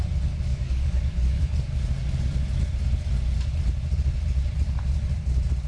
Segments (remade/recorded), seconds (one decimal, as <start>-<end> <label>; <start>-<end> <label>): 0.0-0.5 recorded; 0.5-1.5 remade; 1.5-5.7 recorded

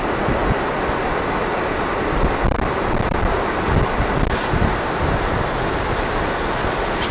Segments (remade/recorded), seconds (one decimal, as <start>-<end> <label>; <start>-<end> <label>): 0.0-7.1 recorded

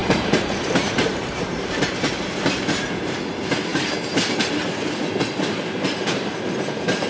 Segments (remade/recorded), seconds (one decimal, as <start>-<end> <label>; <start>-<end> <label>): 0.0-1.9 remade; 1.9-3.7 recorded; 3.7-4.6 remade; 4.6-7.1 recorded

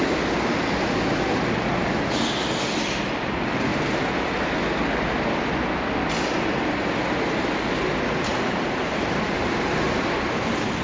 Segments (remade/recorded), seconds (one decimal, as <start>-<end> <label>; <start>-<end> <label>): 0.0-3.7 recorded; 3.7-4.3 remade; 4.3-8.3 recorded; 8.3-9.1 remade; 9.1-10.8 recorded

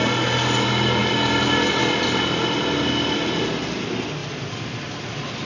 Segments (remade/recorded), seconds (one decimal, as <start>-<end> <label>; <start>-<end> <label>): 0.0-5.5 recorded

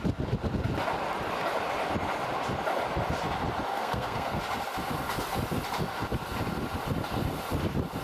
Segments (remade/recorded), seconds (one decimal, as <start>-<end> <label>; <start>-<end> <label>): 0.0-3.7 recorded; 3.7-4.4 remade; 4.4-8.0 recorded

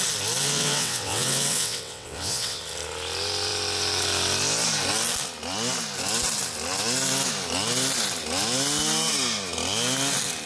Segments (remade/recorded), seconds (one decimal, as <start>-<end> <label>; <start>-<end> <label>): 0.0-0.4 recorded; 0.4-2.6 remade; 2.6-10.5 recorded